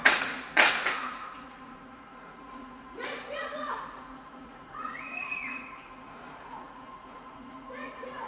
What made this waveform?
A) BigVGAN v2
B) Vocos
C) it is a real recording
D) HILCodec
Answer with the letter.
B